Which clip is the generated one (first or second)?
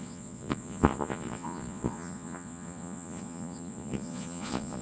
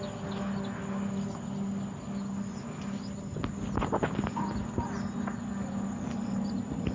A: first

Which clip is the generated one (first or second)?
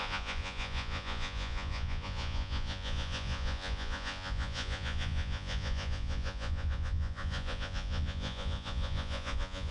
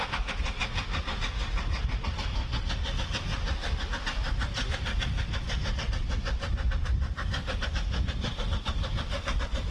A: first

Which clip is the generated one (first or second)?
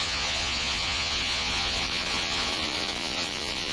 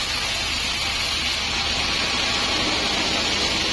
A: first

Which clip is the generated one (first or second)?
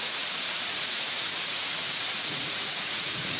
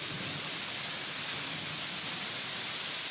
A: first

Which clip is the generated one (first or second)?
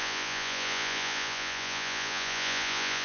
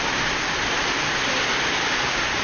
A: first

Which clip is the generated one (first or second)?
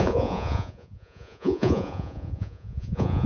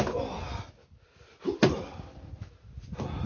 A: first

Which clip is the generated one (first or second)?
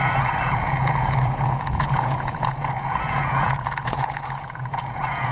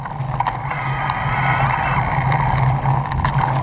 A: first